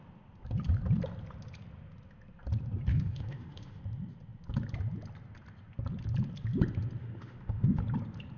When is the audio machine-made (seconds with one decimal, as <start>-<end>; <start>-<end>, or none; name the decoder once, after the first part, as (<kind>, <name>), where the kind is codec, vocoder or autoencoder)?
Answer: 2.9-3.8 (autoencoder, DAC-VAE); 7.0-7.8